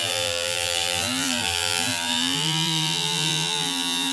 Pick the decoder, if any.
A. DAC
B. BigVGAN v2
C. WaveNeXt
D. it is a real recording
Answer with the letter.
B